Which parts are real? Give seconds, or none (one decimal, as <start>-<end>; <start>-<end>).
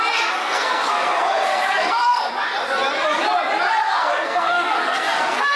0.0-0.4; 2.3-3.8